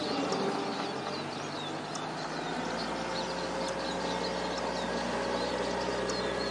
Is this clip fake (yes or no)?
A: no